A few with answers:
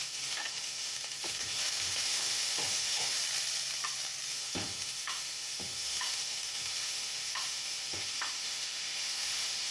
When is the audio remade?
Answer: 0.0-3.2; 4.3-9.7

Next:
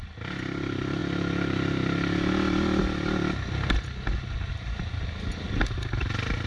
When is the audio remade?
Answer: none

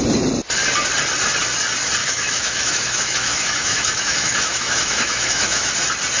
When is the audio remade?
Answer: 2.0-5.7

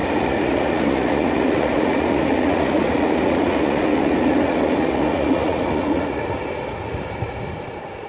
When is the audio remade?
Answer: 0.0-8.1

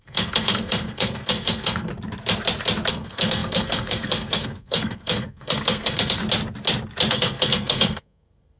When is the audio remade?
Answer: 0.0-1.9; 2.9-6.2; 7.1-8.6

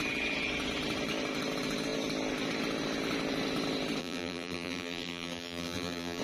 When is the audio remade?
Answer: 4.0-6.2

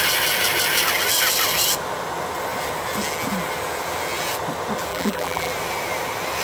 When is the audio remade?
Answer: 4.9-5.5

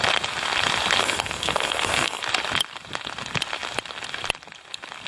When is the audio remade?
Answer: 1.0-2.2